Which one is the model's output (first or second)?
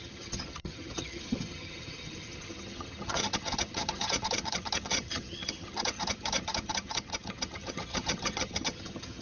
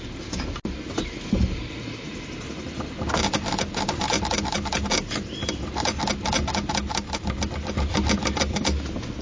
first